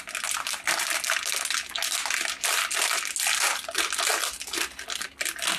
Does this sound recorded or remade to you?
recorded